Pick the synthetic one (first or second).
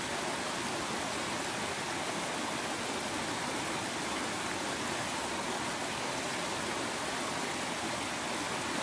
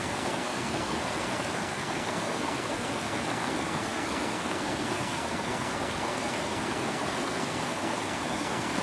second